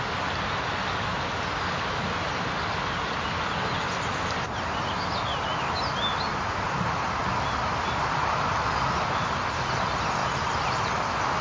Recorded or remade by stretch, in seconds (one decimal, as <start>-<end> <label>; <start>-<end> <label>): 0.0-11.4 recorded